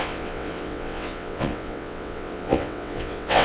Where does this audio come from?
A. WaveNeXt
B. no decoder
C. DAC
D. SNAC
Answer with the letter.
A